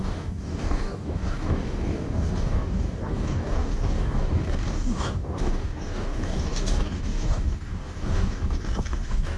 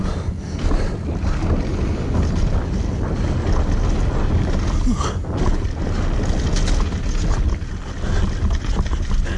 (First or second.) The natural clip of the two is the second